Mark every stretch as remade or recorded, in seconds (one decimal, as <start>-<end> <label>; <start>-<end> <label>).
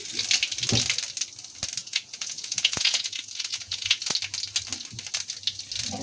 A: 0.0-1.8 recorded; 1.8-4.1 remade; 4.1-6.0 recorded